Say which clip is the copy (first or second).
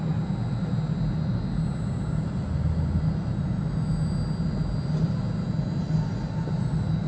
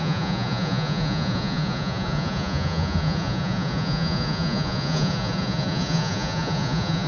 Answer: second